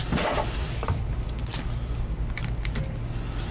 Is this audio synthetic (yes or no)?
no